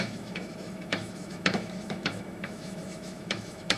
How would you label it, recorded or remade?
remade